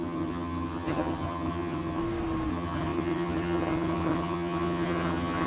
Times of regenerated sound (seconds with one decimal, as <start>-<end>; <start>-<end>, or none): 0.0-2.0; 2.5-5.5